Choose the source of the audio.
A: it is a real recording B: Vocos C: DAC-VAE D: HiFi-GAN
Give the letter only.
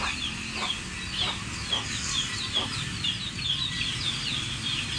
A